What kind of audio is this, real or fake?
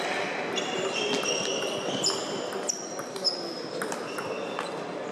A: real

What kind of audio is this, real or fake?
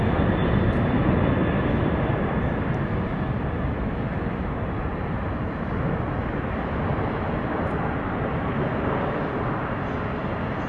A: real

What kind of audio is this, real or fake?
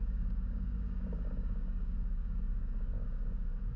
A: fake